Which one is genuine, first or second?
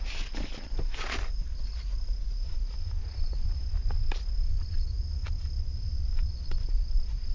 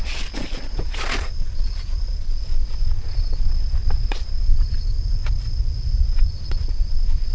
first